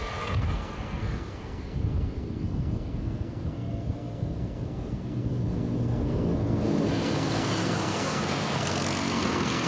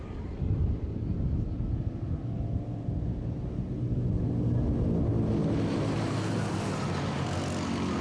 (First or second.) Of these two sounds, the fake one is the first